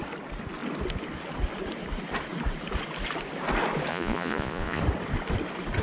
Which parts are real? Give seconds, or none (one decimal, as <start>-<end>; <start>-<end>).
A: 0.0-3.9; 4.8-5.8